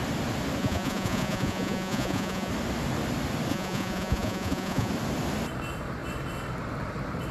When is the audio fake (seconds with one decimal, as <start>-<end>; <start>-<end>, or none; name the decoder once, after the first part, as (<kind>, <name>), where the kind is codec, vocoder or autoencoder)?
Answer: 0.6-2.5 (vocoder, Vocos); 3.5-4.9